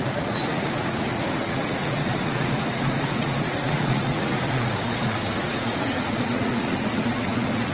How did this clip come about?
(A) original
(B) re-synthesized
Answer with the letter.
B